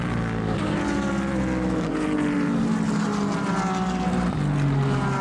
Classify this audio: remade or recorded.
recorded